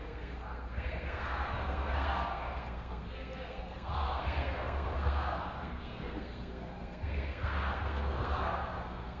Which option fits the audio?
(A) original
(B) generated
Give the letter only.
B